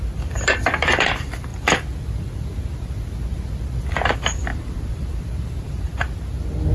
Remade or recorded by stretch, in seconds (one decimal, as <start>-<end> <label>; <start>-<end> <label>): 0.0-4.5 recorded; 4.5-5.8 remade; 5.8-6.7 recorded